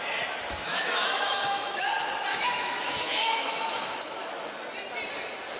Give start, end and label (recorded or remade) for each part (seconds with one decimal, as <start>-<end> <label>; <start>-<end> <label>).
0.0-0.7 recorded; 0.7-1.8 remade; 1.8-2.3 recorded; 2.3-4.3 remade; 4.3-5.6 recorded